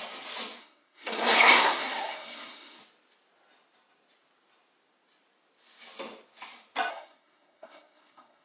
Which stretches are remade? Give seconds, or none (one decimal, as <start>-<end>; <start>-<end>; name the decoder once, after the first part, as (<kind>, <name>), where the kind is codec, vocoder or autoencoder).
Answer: 0.6-2.8 (codec, SNAC); 6.9-8.4